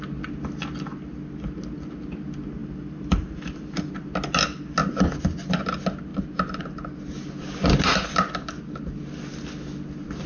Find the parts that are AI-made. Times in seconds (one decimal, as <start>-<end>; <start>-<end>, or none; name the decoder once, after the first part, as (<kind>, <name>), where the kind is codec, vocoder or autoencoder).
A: 2.6-3.9 (vocoder, BigVGAN v2); 6.1-6.6